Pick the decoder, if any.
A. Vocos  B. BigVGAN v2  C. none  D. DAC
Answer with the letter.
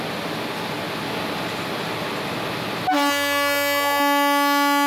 C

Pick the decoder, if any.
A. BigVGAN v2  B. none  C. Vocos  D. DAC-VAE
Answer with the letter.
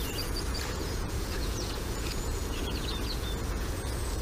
C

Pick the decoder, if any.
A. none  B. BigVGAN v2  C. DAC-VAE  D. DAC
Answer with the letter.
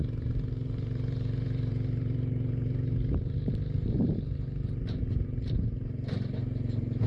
B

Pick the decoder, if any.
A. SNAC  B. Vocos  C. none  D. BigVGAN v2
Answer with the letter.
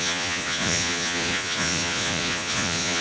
B